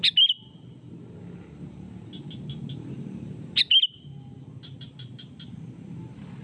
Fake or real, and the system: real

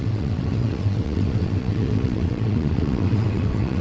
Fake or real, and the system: fake, vocoder, WaveNeXt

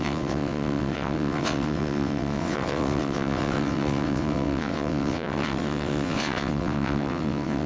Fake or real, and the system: fake, vocoder, WaveNeXt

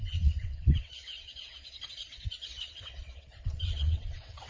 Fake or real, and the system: fake, vocoder, WaveNeXt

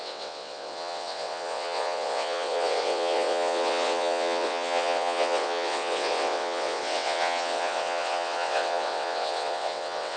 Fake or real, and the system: fake, vocoder, WaveNeXt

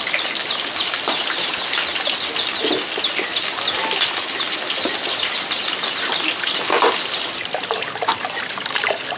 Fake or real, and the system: real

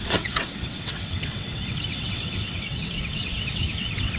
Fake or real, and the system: fake, vocoder, WaveNeXt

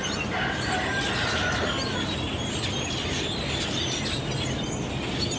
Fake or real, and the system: real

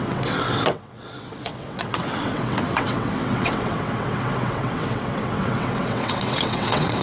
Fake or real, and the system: fake, vocoder, WaveNeXt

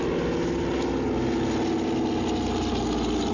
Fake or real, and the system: real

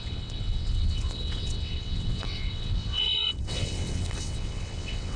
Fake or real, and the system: fake, vocoder, WaveNeXt